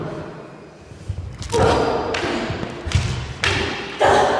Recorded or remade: recorded